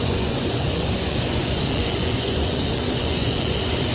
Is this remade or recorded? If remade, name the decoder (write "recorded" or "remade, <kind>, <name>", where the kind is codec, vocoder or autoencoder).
remade, vocoder, Vocos